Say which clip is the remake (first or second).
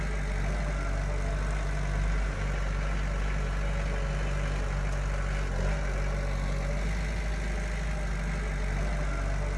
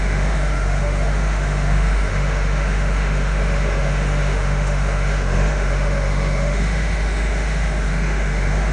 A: second